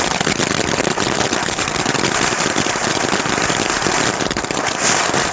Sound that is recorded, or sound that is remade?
recorded